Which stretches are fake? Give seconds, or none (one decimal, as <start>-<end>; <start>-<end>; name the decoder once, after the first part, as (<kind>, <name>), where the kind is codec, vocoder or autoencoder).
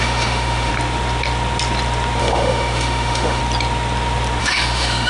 0.0-0.7 (autoencoder, DAC-VAE); 2.2-3.4; 4.4-5.1